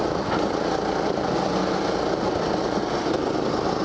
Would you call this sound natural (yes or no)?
yes